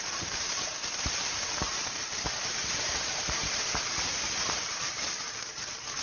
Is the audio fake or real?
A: fake